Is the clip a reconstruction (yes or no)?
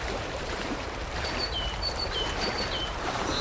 yes